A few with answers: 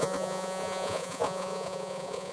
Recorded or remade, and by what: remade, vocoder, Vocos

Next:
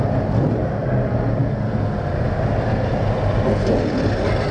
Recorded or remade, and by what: recorded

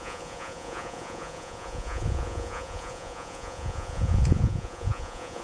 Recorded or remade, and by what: remade, vocoder, Vocos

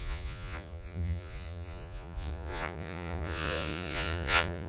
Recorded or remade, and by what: remade, vocoder, Vocos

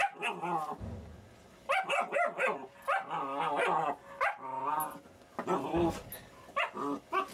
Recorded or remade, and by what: recorded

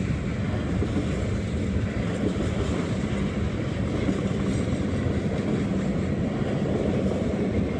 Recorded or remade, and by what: recorded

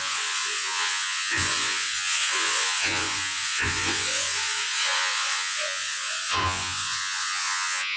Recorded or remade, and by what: remade, vocoder, Vocos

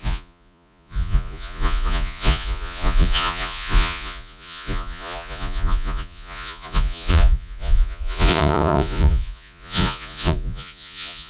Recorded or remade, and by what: remade, vocoder, Vocos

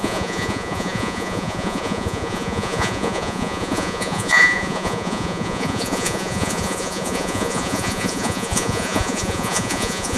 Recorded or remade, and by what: remade, vocoder, Vocos